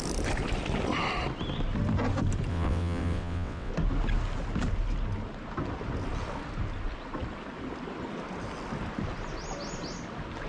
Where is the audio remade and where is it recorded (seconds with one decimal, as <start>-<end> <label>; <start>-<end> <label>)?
0.0-2.5 recorded; 2.5-3.7 remade; 3.7-10.5 recorded